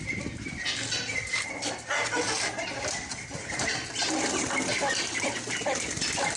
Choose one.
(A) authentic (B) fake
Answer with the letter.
A